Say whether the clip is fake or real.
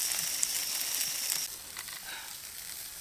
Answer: real